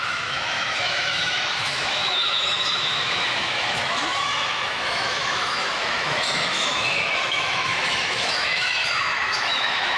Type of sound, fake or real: fake